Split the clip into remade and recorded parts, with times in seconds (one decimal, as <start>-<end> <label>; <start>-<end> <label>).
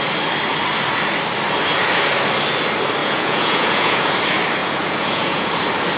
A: 0.0-3.0 recorded; 3.0-4.1 remade; 4.1-4.6 recorded; 4.6-5.5 remade; 5.5-6.0 recorded